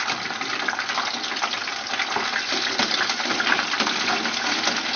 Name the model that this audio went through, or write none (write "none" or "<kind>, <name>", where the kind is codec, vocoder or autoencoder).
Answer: none